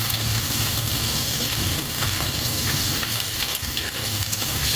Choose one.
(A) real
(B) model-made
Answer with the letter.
B